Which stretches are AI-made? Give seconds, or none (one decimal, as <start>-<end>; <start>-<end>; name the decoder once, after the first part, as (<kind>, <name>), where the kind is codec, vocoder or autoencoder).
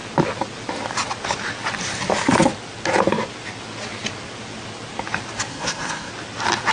5.5-6.1 (codec, SNAC)